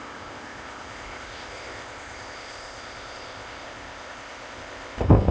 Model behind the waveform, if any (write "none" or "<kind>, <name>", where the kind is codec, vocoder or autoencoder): codec, ZipCodec